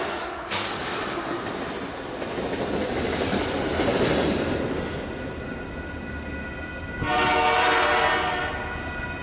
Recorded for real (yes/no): yes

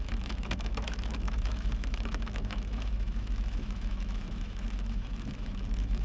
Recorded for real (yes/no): no